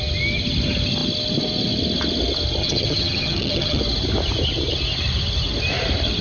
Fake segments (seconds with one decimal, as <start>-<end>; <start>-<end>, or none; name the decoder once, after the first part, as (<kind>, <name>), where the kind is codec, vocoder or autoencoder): 2.6-3.8 (vocoder, HiFi-GAN)